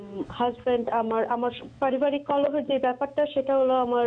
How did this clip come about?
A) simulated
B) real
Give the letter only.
A